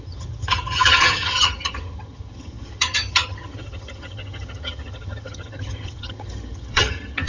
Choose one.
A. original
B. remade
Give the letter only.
B